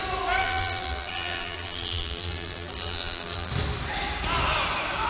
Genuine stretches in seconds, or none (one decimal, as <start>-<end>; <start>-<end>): 0.0-0.4; 3.5-5.1